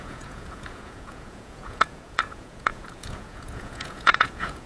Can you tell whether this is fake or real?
fake